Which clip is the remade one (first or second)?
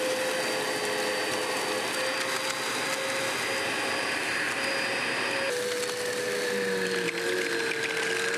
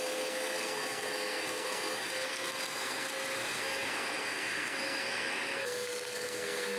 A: second